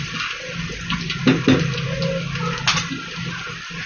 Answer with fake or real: real